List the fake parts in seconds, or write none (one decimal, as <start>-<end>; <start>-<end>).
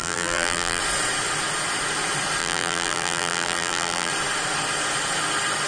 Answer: 0.0-0.8; 2.4-4.1